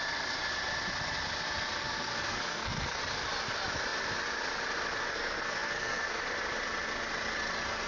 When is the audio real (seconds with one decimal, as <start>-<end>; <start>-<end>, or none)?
0.0-1.8; 3.0-5.1; 6.2-7.9